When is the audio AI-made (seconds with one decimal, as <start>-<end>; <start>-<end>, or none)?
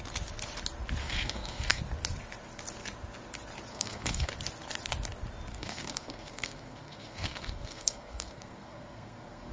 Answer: 1.0-1.8; 3.7-4.3; 5.5-9.5